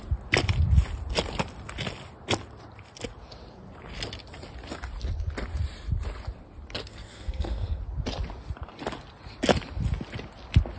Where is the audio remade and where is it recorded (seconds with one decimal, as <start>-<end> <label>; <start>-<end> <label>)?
0.0-6.9 recorded; 6.9-7.8 remade; 7.8-10.8 recorded

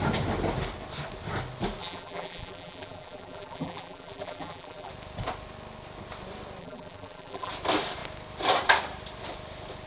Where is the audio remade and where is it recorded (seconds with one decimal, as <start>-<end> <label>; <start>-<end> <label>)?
0.0-1.8 recorded; 1.8-4.9 remade; 4.9-6.6 recorded; 6.6-7.5 remade; 7.5-9.9 recorded